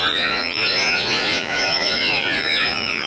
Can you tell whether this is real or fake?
fake